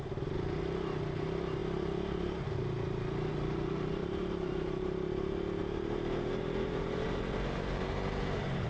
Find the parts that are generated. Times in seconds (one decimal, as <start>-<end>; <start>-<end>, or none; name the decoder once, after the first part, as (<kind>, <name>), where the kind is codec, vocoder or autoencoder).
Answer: 4.0-5.1 (vocoder, BigVGAN v2); 5.6-8.7